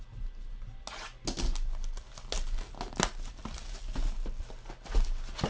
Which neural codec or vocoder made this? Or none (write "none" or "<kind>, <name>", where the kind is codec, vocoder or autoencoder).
none